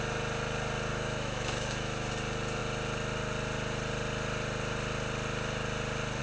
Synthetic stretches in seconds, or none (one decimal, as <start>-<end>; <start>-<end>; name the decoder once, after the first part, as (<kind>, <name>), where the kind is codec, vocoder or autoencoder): 0.9-2.1 (autoencoder, DAC-VAE)